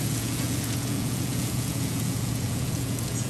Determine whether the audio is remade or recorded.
remade